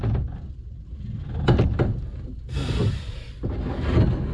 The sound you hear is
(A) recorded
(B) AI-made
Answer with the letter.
A